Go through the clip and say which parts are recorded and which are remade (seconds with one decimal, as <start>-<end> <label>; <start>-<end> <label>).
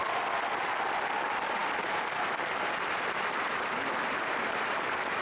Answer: 0.0-5.2 recorded